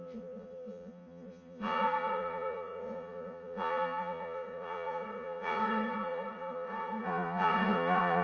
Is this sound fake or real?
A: fake